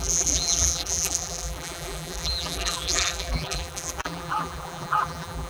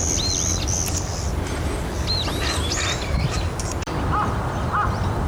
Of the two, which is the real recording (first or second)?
second